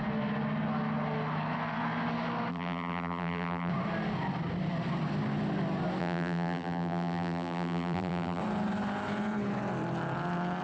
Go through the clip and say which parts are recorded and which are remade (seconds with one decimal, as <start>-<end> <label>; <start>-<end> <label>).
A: 0.0-2.5 recorded; 2.5-3.7 remade; 3.7-6.0 recorded; 6.0-8.4 remade; 8.4-10.6 recorded